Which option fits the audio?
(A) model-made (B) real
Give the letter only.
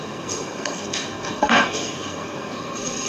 A